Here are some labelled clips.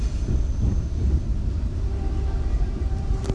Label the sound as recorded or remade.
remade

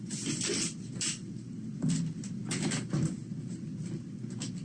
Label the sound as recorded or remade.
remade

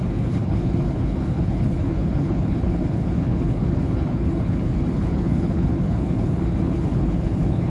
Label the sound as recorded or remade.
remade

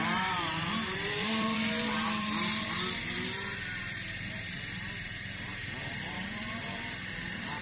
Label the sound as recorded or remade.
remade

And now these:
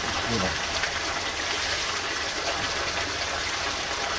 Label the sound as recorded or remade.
recorded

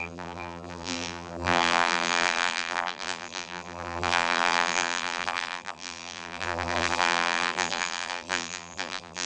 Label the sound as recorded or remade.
remade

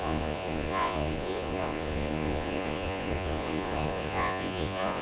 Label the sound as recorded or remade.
remade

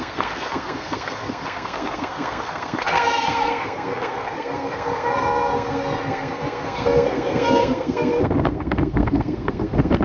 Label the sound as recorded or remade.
remade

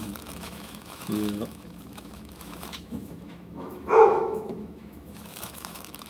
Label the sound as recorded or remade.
remade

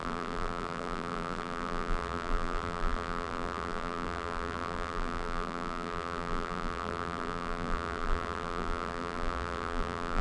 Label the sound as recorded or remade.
remade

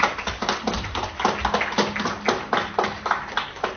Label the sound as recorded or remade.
recorded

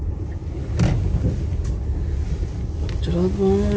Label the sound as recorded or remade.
recorded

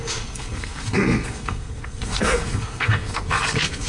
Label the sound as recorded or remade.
remade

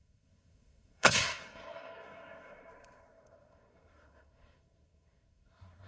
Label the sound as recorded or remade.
remade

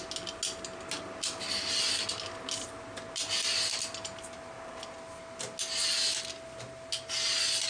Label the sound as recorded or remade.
recorded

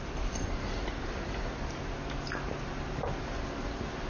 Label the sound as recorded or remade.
recorded